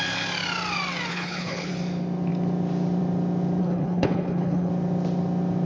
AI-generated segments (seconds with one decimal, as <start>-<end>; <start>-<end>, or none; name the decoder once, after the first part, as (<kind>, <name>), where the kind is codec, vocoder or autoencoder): 1.1-1.7 (codec, HILCodec); 3.6-4.7